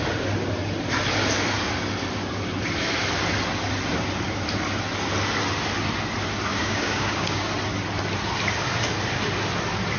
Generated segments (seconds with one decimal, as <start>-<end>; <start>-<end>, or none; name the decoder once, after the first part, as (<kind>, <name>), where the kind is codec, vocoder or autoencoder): 6.5-7.5 (codec, DAC)